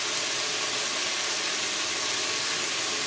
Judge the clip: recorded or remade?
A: recorded